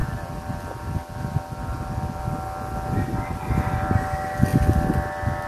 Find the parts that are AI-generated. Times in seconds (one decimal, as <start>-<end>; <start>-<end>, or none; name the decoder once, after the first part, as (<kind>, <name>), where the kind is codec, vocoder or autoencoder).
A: none